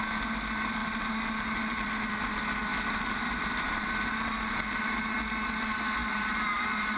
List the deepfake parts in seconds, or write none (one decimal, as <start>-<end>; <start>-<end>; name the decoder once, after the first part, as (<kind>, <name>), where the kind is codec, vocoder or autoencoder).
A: 0.8-2.1 (vocoder, BigVGAN v2); 2.7-5.1; 6.0-7.0